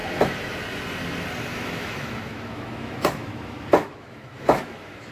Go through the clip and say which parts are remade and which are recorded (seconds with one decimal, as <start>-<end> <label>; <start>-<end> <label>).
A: 0.0-1.4 recorded; 1.4-5.1 remade